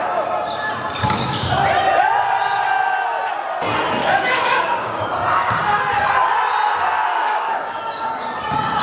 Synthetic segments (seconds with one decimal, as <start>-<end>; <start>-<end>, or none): 1.0-1.5; 4.0-5.0; 7.1-8.1